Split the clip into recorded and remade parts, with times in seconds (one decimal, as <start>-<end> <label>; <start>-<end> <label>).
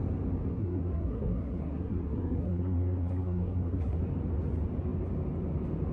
0.0-0.5 recorded; 0.5-4.0 remade; 4.0-5.9 recorded